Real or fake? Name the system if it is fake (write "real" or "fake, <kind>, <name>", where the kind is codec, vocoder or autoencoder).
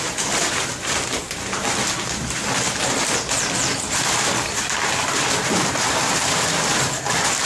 fake, vocoder, BigVGAN v2